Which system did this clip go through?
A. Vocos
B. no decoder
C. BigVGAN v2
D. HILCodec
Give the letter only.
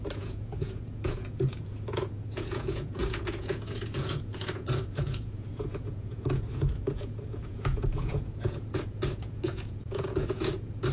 A